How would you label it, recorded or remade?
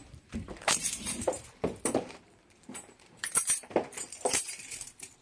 remade